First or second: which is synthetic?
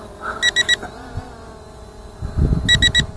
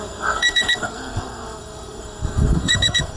second